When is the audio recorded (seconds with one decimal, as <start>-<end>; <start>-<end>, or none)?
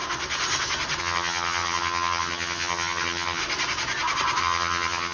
0.0-1.0; 3.4-4.4